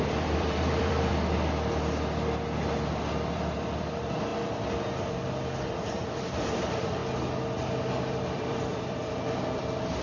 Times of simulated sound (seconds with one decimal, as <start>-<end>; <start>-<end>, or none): 0.0-1.1; 3.3-4.3; 5.9-7.0; 8.1-10.0